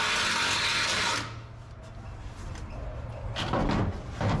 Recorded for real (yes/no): yes